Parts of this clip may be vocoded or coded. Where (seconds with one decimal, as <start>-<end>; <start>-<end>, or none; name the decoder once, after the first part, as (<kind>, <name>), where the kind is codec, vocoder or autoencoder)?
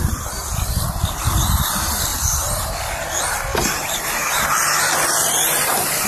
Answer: 2.1-2.7 (vocoder, BigVGAN v2); 3.5-4.3